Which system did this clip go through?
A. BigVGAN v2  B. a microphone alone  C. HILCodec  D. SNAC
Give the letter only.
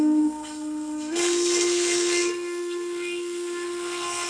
D